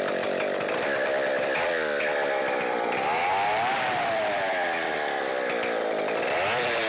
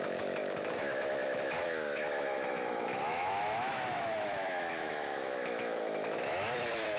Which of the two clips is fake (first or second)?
second